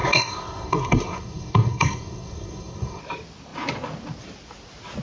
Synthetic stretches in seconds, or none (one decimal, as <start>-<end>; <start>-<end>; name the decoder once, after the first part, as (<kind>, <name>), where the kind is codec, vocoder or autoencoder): 0.0-3.0 (codec, SNAC)